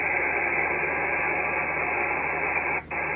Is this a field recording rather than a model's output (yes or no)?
yes